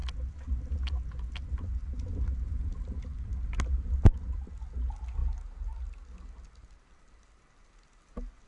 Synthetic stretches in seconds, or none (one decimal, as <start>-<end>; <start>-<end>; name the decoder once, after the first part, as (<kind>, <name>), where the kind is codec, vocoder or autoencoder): none